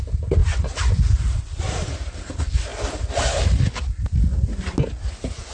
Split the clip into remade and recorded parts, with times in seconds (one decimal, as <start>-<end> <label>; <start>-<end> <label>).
0.0-5.5 recorded